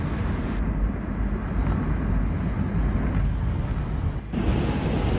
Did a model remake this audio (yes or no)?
no